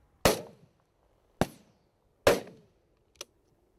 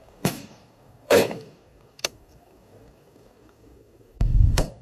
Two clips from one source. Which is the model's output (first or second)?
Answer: second